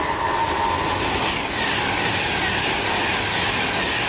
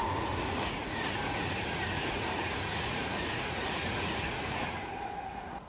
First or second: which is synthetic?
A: second